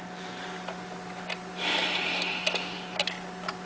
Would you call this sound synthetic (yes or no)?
no